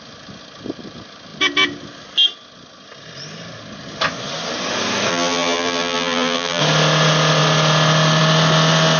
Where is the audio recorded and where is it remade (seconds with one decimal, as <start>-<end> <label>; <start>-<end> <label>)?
0.0-5.1 recorded; 5.1-6.6 remade; 6.6-9.0 recorded